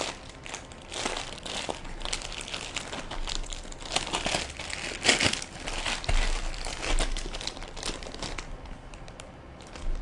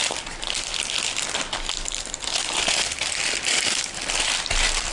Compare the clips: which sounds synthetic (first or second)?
second